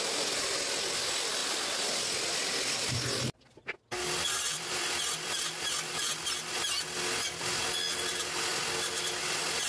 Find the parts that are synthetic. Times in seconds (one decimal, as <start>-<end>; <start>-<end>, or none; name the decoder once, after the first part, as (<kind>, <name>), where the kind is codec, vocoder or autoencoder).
none